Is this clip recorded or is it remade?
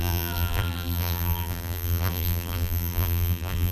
remade